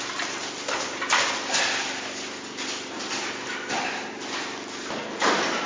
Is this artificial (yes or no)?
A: no